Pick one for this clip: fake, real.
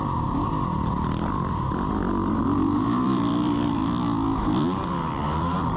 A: fake